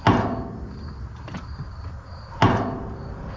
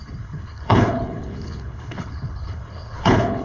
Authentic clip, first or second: first